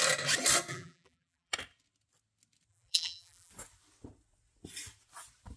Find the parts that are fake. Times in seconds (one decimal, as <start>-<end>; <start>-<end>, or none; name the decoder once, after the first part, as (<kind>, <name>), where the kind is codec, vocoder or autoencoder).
0.7-1.5 (vocoder, BigVGAN v2); 2.7-3.5